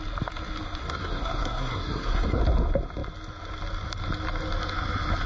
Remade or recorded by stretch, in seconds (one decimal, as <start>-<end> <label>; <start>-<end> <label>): 0.0-0.8 recorded; 0.8-2.4 remade; 2.4-5.3 recorded